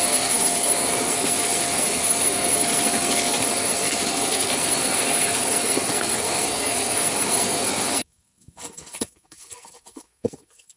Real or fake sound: fake